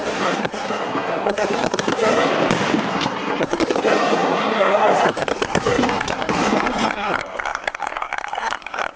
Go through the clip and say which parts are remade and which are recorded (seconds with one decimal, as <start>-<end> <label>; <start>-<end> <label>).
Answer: 0.0-2.3 remade; 2.3-2.9 recorded; 2.9-9.0 remade